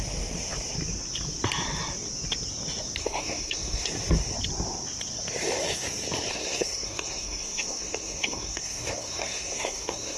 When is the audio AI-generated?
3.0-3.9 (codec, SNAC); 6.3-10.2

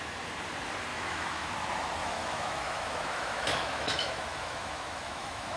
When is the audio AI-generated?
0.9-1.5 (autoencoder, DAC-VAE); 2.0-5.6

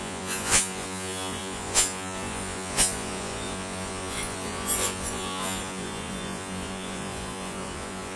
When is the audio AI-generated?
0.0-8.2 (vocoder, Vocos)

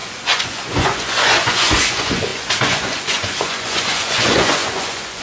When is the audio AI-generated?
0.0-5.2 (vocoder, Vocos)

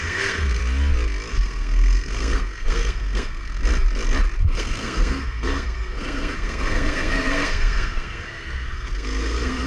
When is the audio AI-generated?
0.0-0.6 (codec, SNAC); 1.3-3.6; 4.4-9.7